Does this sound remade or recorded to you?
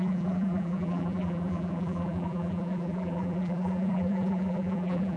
remade